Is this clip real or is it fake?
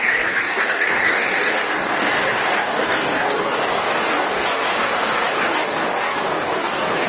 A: fake